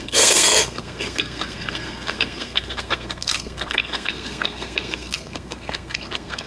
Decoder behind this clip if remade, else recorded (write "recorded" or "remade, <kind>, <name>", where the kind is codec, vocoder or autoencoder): remade, codec, SNAC